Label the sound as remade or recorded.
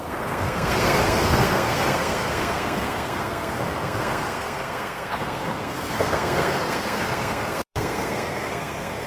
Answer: remade